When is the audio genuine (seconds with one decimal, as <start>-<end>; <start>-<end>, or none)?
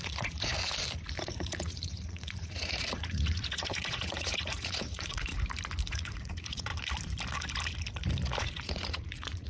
0.6-1.2; 5.3-5.9; 6.7-8.4